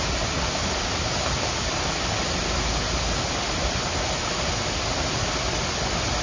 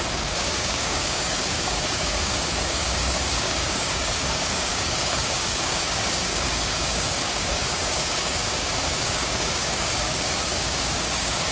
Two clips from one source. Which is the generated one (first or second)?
second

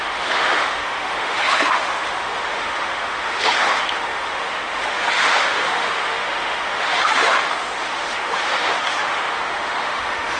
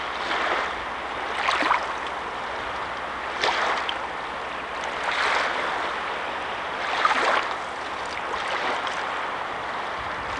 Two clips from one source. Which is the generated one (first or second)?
first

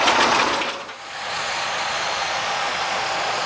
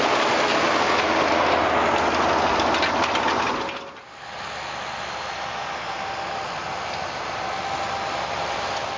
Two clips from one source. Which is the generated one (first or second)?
first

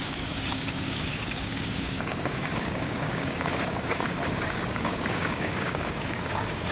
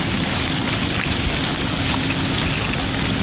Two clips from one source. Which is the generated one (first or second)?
first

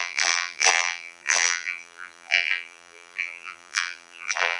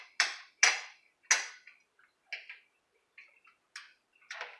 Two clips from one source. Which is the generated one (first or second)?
first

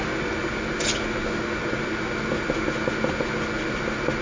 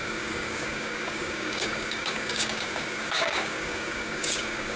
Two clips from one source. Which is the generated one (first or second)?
second